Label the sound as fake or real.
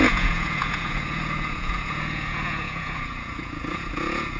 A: fake